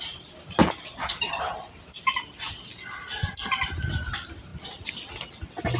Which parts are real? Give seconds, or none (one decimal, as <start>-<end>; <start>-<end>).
0.0-0.6; 1.5-4.5; 5.3-5.8